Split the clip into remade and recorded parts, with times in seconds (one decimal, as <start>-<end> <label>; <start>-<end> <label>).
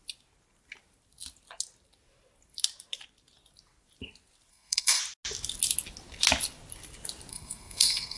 0.0-4.5 recorded; 4.5-5.0 remade; 5.0-7.3 recorded; 7.3-8.2 remade